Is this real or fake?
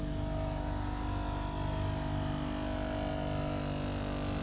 real